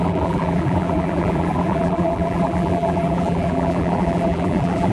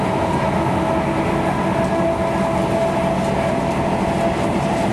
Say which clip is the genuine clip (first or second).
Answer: second